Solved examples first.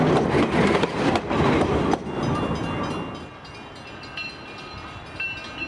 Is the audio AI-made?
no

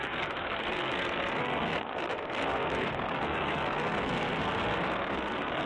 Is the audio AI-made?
yes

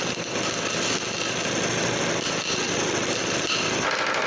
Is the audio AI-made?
no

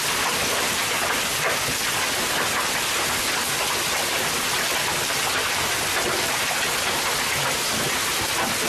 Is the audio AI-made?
no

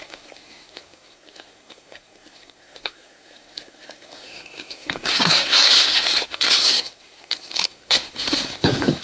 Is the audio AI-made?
yes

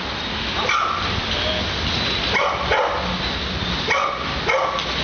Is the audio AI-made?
no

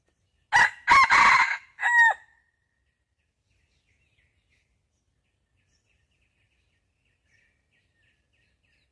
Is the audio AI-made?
no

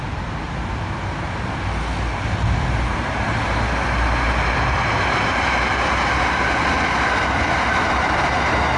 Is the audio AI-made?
no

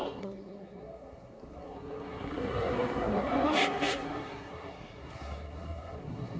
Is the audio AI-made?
yes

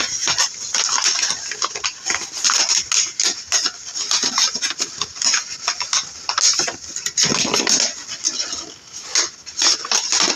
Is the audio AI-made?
no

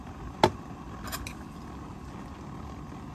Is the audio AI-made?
no